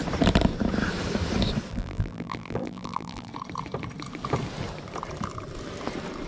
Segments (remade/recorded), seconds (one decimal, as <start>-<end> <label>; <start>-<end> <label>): 0.0-1.7 recorded; 1.7-3.3 remade; 3.3-6.3 recorded